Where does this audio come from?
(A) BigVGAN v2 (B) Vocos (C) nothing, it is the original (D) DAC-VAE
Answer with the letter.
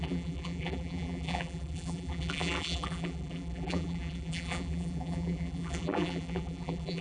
A